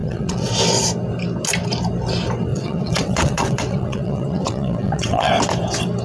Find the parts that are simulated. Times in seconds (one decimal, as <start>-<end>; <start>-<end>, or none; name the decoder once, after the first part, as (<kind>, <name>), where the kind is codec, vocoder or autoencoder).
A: 0.0-0.5 (vocoder, WaveNeXt); 2.5-5.3